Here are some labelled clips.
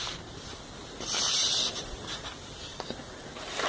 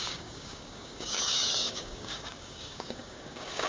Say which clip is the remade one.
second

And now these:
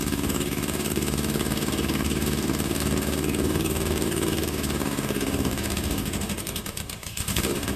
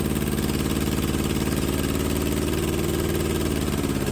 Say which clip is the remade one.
first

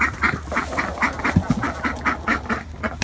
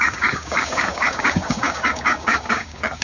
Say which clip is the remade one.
second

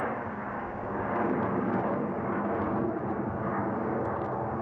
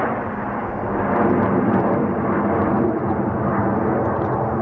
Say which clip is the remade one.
first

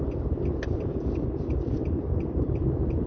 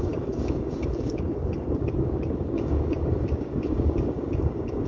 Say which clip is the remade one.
second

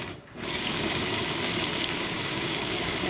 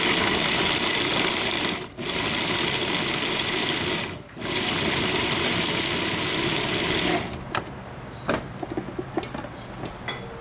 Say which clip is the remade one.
first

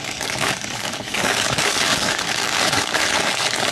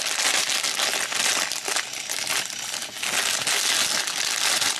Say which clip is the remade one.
first